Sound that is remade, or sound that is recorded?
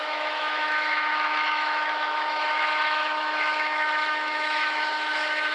remade